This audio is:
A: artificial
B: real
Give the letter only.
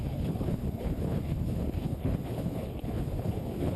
A